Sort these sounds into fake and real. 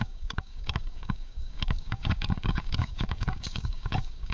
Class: fake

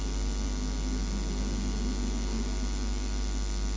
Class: real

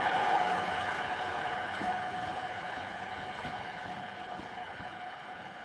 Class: fake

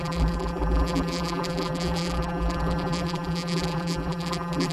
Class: fake